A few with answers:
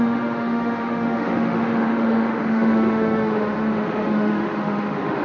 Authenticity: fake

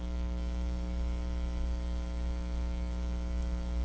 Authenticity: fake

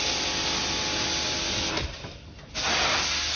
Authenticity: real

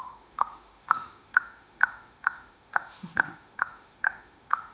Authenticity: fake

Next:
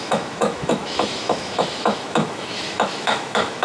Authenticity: fake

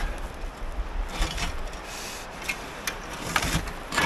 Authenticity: real